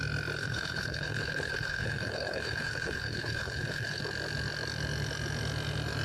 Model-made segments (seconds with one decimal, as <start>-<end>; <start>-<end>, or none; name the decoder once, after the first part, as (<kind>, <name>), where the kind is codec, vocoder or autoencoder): 0.4-4.0 (codec, HILCodec)